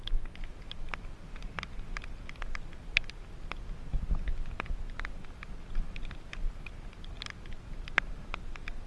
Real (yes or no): yes